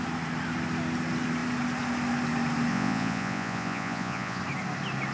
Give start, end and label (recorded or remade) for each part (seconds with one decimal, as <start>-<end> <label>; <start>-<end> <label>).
0.0-2.7 recorded; 2.7-4.4 remade; 4.4-5.1 recorded